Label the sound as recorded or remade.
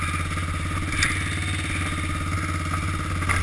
recorded